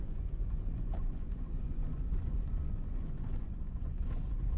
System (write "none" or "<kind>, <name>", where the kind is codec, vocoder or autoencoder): vocoder, Vocos